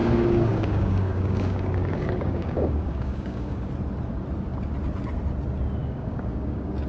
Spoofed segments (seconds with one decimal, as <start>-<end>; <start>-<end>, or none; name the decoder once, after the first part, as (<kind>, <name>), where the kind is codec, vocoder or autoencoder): 0.0-3.7 (codec, DAC); 5.8-6.9